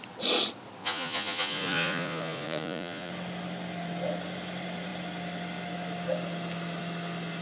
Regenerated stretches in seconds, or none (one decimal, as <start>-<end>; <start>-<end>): 0.8-3.1